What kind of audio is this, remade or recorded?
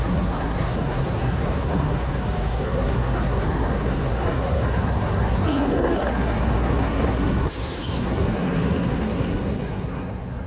remade